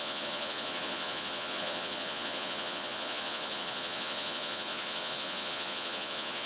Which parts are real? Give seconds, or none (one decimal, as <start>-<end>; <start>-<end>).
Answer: none